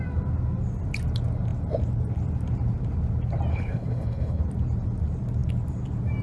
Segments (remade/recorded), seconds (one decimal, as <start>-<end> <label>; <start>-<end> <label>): 0.0-3.5 recorded; 3.5-4.4 remade; 4.4-6.2 recorded